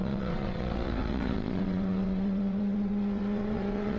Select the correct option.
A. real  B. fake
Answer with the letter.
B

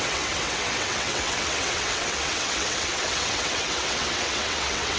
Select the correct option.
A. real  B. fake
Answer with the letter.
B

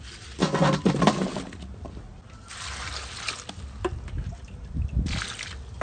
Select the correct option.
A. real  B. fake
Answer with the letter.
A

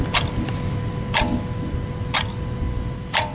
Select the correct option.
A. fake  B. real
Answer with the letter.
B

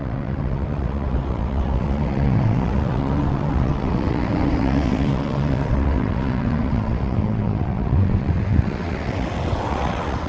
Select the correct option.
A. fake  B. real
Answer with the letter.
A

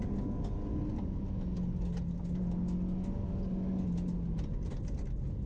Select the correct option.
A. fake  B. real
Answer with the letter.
B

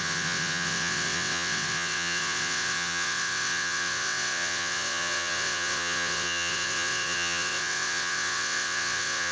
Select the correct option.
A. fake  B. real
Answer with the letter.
A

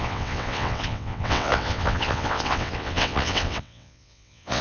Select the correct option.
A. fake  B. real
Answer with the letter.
A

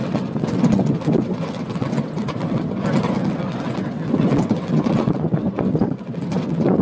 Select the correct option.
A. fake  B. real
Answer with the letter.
A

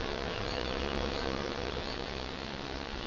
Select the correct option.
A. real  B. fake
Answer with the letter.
B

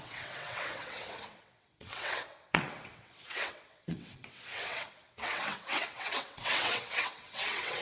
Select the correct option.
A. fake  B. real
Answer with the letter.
A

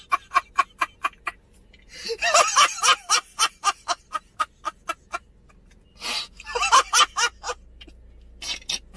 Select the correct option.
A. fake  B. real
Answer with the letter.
B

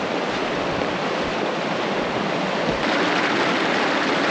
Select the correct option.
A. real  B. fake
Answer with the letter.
A